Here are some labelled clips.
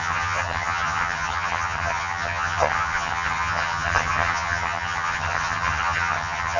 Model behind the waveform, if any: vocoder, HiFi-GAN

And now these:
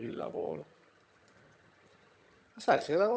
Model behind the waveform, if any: vocoder, HiFi-GAN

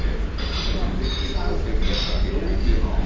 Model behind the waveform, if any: none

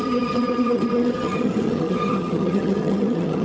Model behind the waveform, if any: vocoder, HiFi-GAN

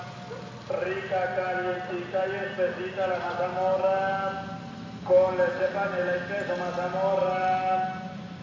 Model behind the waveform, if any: none